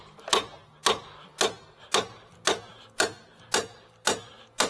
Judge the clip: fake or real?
real